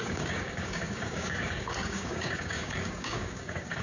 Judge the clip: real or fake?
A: fake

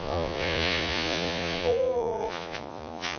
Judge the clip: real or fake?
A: fake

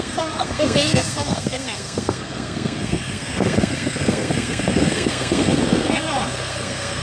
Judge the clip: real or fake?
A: fake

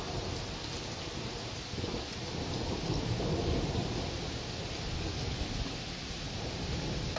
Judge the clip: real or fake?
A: real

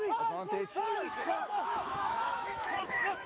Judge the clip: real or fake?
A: fake